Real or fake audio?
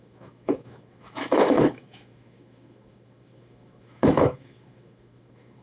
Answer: fake